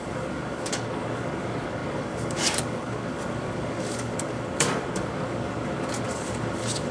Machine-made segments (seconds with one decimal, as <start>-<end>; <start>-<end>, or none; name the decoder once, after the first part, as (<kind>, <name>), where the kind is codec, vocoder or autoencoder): 0.0-6.9 (codec, DAC)